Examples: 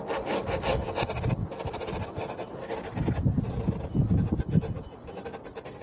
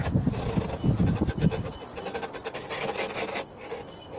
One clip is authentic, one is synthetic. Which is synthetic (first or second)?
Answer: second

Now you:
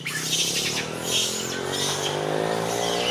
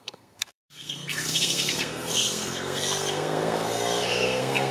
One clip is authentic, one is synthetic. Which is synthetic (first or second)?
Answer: second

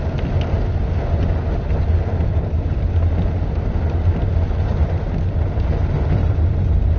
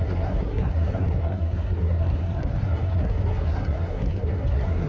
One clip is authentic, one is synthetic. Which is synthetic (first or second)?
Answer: second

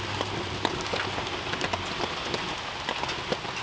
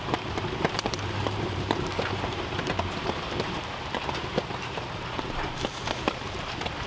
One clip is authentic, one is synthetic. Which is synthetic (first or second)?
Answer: second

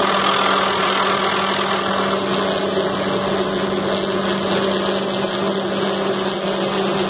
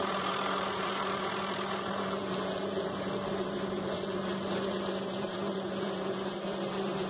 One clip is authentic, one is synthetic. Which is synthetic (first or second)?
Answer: second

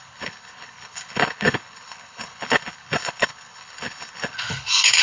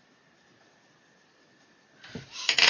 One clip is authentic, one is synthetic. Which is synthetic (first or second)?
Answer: first